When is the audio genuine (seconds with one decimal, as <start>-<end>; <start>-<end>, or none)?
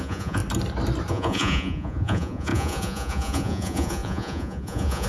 0.4-1.1